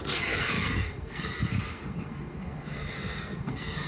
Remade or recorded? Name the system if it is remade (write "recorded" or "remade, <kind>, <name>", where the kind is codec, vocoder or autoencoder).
remade, codec, SNAC